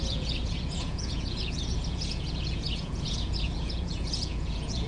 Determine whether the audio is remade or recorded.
remade